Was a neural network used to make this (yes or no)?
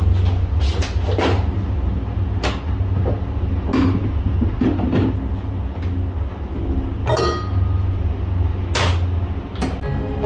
no